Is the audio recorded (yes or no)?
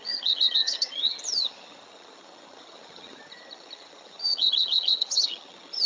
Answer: no